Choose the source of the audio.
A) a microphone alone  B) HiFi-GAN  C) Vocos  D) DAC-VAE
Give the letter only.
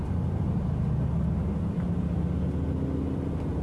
A